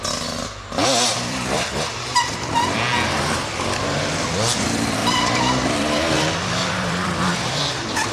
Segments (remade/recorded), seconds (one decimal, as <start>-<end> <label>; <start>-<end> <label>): 0.0-1.1 recorded; 1.1-1.9 remade; 1.9-5.0 recorded; 5.0-8.1 remade